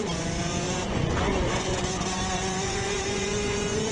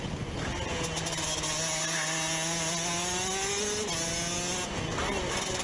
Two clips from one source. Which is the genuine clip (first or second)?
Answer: second